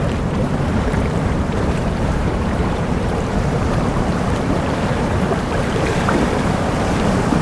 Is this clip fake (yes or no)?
yes